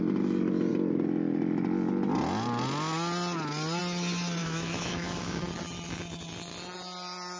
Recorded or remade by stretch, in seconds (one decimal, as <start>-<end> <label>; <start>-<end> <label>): 0.0-4.4 recorded; 4.4-5.4 remade; 5.4-7.4 recorded